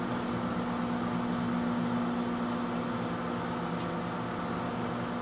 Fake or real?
real